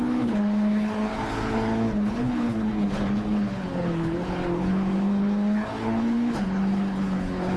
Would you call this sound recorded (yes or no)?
no